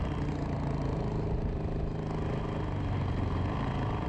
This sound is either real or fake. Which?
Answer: real